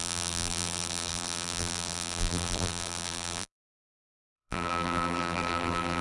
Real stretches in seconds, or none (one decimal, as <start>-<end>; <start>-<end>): none